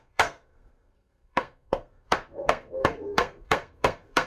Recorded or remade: remade